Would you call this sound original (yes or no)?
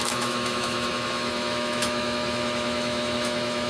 no